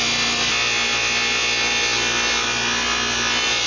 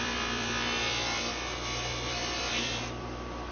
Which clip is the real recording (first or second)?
first